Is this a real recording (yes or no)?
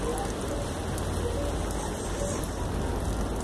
yes